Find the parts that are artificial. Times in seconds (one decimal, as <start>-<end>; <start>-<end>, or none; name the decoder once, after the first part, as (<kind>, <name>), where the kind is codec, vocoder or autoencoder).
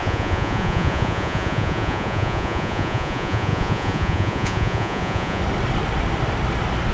0.0-5.4 (vocoder, Vocos)